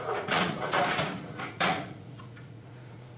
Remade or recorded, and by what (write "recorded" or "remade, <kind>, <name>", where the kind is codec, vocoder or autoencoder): remade, vocoder, Vocos